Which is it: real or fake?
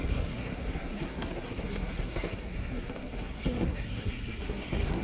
fake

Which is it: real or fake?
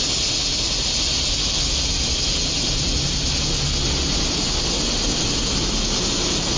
real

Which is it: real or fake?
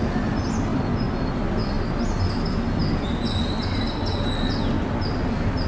real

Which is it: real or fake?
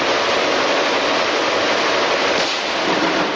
fake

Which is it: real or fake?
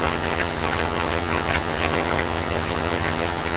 fake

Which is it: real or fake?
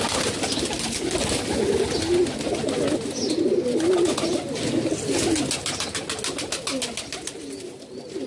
real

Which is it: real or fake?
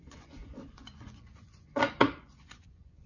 fake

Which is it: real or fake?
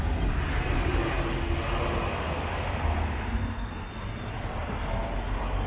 real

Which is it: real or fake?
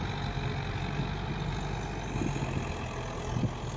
real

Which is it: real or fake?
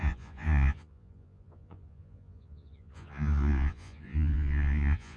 fake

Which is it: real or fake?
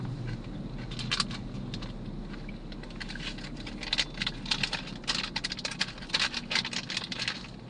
real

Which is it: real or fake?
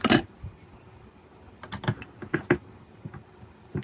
real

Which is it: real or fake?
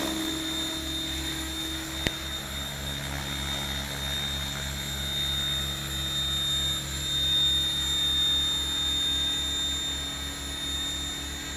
real